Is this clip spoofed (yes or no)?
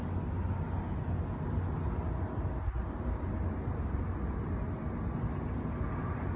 no